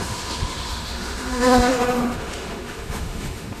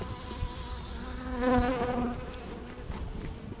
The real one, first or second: second